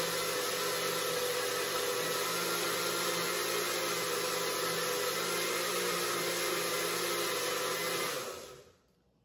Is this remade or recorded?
recorded